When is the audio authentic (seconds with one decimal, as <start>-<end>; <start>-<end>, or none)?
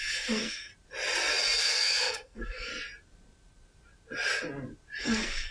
0.7-1.6; 2.7-5.0